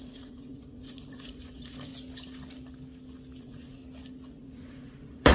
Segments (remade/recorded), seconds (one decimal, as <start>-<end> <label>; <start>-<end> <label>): 0.0-1.9 remade; 1.9-3.4 recorded; 3.4-3.8 remade; 3.8-4.3 recorded; 4.3-5.3 remade